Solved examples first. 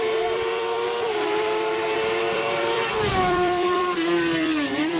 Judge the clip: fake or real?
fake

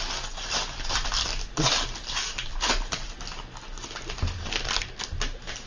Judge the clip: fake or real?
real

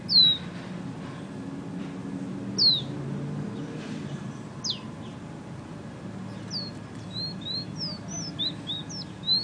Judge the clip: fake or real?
real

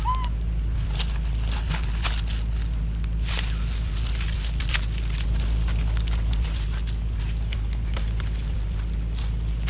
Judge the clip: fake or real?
real